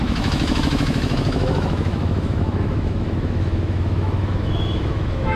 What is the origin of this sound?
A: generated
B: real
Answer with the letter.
A